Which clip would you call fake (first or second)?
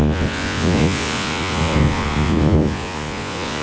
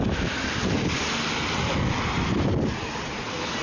first